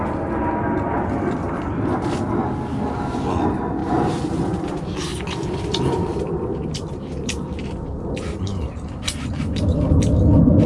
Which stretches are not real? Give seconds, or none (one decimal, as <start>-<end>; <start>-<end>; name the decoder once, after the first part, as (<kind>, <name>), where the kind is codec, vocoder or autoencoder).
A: 3.8-4.6 (vocoder, BigVGAN v2); 5.1-9.8